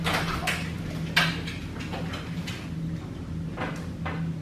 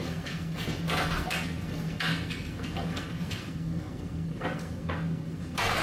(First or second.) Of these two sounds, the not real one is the second